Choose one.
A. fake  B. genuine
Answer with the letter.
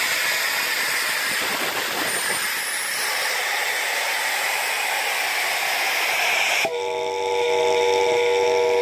B